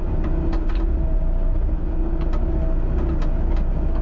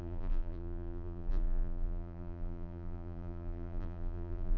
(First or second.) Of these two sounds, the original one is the first